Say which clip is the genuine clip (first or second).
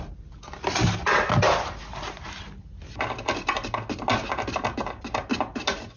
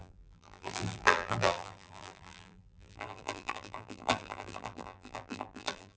first